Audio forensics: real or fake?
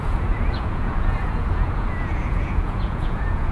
fake